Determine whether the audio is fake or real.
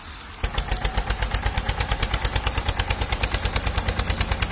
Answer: real